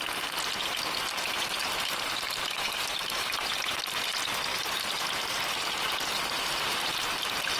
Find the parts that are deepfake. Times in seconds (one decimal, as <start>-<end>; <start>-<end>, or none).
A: 1.6-3.5; 4.5-7.1